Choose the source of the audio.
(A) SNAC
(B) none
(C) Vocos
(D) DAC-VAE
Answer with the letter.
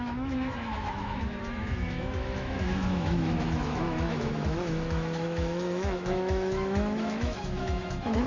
D